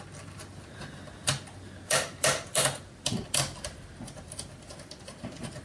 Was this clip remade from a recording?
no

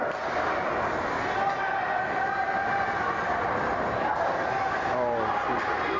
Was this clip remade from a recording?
no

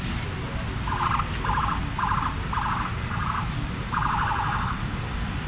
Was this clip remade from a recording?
no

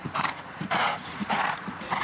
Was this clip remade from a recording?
yes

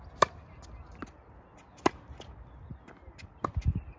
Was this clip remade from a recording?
no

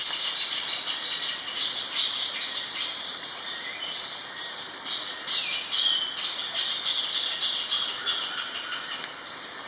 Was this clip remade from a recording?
no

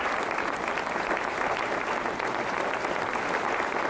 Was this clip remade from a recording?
no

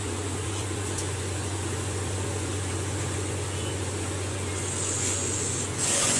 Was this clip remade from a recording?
yes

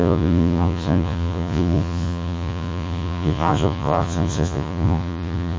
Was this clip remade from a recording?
yes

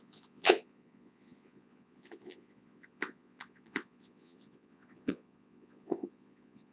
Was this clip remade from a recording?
yes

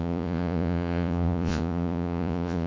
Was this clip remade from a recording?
yes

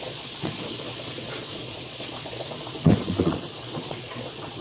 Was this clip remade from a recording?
yes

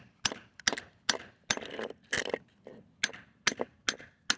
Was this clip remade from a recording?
no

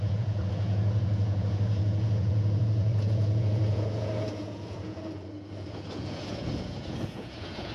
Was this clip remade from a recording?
yes